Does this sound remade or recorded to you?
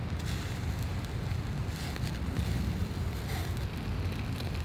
recorded